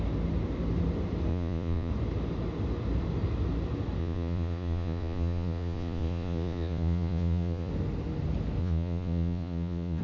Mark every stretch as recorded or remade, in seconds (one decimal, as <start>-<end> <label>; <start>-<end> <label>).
0.0-1.3 recorded; 1.3-1.9 remade; 1.9-4.0 recorded; 4.0-7.7 remade; 7.7-8.6 recorded; 8.6-10.0 remade